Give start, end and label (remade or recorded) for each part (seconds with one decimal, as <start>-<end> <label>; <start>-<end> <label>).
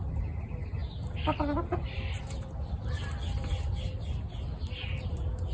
0.0-5.5 recorded